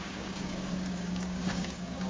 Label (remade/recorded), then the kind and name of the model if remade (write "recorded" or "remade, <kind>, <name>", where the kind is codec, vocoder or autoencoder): remade, codec, DAC